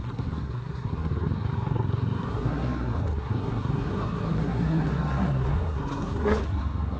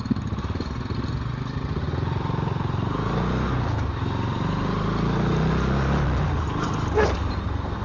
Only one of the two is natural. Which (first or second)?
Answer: second